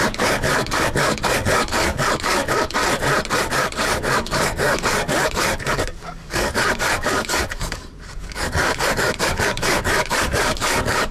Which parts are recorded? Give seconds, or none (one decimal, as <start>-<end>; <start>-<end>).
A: 2.8-3.5